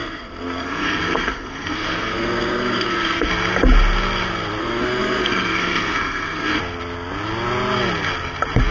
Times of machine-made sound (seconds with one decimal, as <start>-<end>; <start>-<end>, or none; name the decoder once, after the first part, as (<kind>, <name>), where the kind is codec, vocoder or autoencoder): 0.0-3.3 (codec, SNAC); 4.6-6.6